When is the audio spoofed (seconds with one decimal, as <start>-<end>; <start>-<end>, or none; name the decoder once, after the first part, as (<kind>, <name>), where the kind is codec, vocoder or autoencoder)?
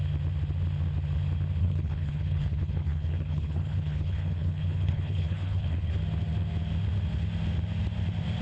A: 1.6-5.9 (codec, HILCodec)